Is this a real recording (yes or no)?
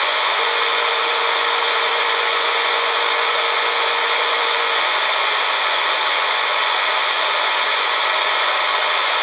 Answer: no